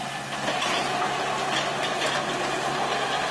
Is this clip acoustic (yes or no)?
yes